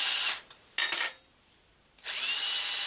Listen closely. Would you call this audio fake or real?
real